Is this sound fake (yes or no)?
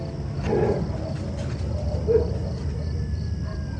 no